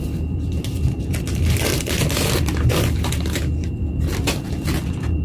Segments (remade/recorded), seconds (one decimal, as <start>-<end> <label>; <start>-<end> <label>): 0.0-1.7 remade; 1.7-4.5 recorded; 4.5-5.2 remade